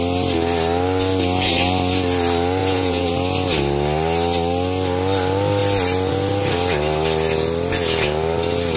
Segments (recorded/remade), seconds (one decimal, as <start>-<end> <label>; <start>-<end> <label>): 0.0-2.6 recorded; 2.6-3.1 remade; 3.1-8.8 recorded